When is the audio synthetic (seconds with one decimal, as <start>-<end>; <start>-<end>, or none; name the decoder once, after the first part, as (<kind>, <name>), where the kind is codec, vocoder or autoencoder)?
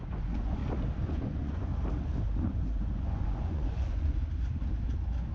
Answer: 0.0-0.6 (vocoder, Vocos); 1.1-1.7; 2.4-4.2